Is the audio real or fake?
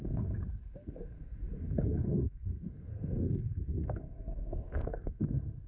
fake